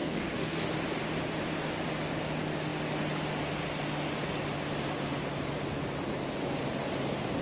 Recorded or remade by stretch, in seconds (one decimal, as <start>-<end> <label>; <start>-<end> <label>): 0.0-0.7 remade; 0.7-7.4 recorded